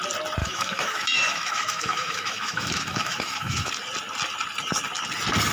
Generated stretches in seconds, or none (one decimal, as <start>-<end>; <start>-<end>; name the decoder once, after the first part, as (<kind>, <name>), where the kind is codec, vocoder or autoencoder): 0.4-3.7 (autoencoder, DAC-VAE)